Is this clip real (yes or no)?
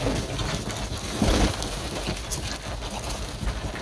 yes